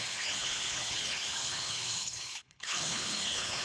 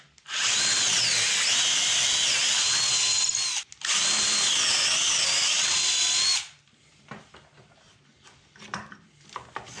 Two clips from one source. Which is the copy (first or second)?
first